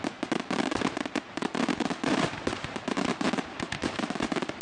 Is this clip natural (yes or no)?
no